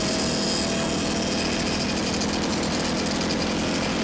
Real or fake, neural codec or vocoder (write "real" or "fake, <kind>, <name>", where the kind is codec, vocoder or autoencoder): real